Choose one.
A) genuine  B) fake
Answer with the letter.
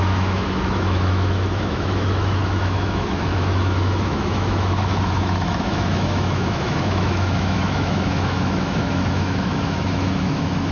B